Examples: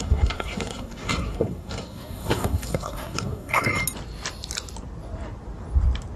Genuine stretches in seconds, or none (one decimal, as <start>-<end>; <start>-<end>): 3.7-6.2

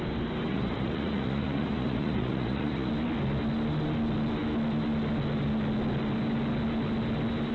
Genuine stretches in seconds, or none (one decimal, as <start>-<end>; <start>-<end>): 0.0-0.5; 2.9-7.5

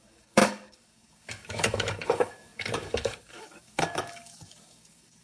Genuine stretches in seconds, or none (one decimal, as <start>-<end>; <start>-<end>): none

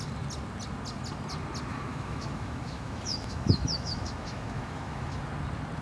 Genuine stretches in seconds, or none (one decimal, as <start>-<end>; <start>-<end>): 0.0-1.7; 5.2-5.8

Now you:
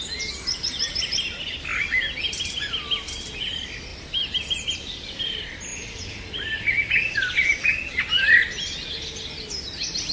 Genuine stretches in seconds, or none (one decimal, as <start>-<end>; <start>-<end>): 0.0-10.1

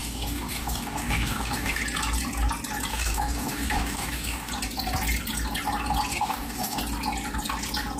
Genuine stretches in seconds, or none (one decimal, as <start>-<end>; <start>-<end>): 1.8-2.9; 4.5-6.1; 6.8-8.0